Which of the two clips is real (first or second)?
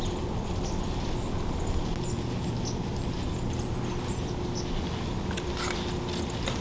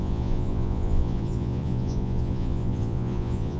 first